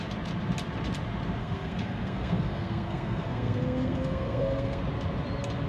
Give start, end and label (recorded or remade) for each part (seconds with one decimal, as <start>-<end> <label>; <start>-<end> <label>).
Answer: 0.0-1.4 recorded; 1.4-4.8 remade; 4.8-5.7 recorded